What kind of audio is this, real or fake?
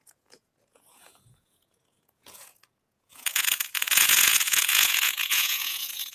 fake